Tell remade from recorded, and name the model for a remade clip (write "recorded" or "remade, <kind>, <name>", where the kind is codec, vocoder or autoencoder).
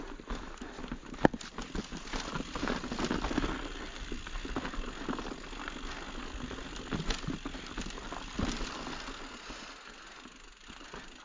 recorded